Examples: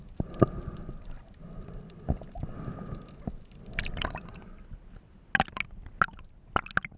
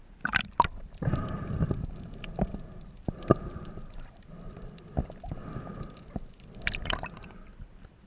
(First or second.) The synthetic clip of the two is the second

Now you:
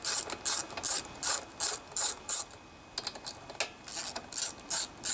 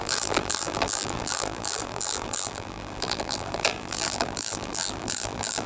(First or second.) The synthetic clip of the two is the second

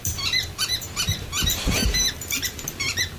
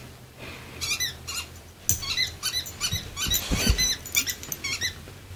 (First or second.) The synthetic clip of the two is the first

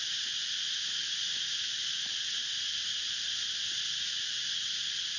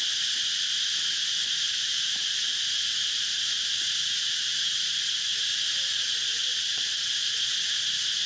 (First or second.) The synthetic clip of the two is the second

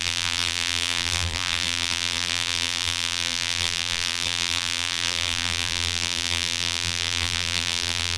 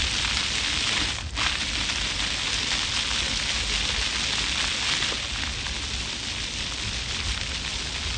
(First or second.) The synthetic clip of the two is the first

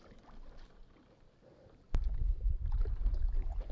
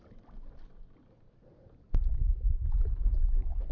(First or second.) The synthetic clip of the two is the first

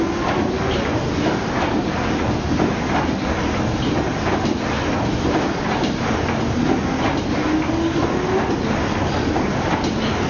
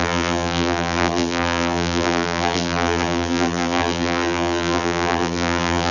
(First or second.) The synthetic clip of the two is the second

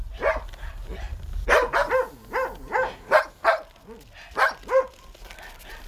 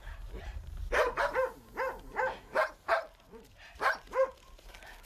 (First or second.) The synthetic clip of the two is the second